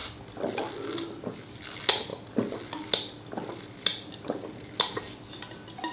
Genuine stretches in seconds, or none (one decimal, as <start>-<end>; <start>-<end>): 0.0-5.9

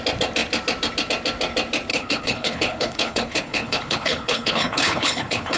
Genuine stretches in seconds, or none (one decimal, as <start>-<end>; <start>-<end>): 0.0-1.9

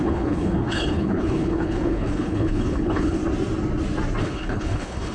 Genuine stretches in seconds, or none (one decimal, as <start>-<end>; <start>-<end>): 3.2-4.2

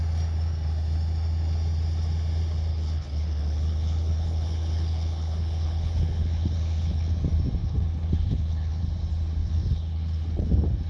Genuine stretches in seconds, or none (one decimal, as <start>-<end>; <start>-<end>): 0.0-2.7; 7.1-7.6; 8.8-9.4; 10.5-10.9

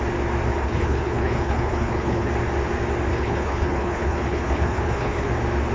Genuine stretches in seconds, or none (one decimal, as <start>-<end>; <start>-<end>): 0.0-0.6; 2.3-3.1; 5.3-5.7

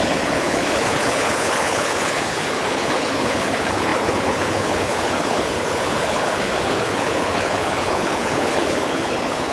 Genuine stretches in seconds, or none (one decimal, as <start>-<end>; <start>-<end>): none